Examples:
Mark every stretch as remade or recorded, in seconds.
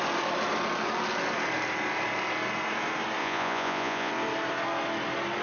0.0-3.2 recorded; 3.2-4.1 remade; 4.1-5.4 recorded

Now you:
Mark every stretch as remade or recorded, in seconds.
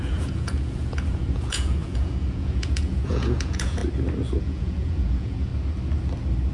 0.0-3.8 remade; 3.8-4.4 recorded; 4.4-5.5 remade; 5.5-6.5 recorded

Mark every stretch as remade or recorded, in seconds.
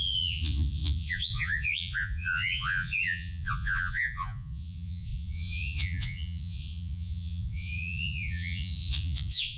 0.0-9.6 remade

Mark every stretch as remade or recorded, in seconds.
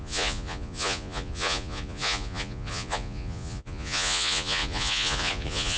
0.0-5.8 remade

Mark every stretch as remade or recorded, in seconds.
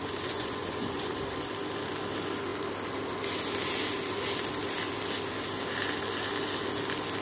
0.0-1.1 remade; 1.1-7.2 recorded